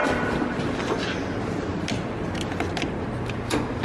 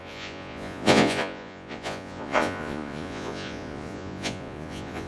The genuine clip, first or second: first